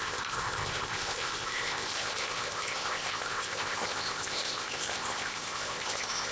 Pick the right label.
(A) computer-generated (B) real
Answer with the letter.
A